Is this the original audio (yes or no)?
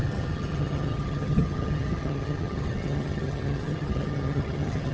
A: no